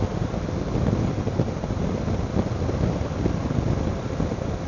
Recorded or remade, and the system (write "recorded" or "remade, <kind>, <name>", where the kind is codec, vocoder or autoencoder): recorded